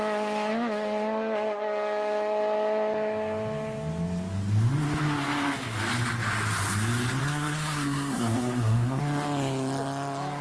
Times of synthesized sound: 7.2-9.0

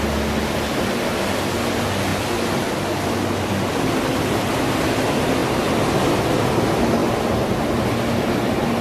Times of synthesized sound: none

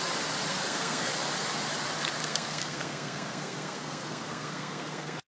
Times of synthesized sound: 0.5-1.1; 2.2-5.3

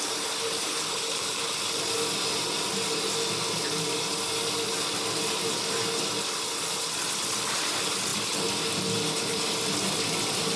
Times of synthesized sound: none